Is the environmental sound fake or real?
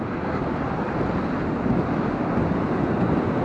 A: real